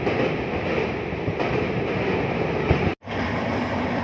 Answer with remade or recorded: recorded